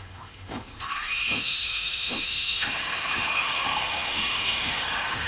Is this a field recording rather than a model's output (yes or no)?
no